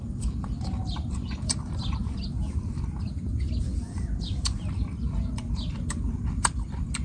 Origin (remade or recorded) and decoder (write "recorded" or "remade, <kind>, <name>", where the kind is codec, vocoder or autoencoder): remade, vocoder, BigVGAN v2